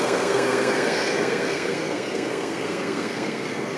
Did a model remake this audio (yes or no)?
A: yes